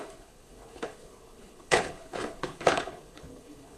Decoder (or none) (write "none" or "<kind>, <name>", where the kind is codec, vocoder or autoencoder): codec, HILCodec